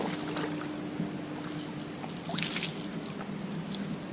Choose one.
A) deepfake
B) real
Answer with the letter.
B